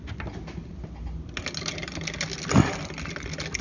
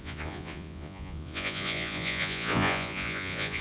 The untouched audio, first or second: first